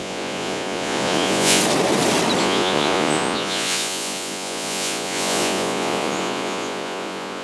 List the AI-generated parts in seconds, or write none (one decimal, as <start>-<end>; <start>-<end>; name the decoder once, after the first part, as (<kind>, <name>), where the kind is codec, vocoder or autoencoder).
0.0-1.6 (vocoder, Vocos); 2.4-7.4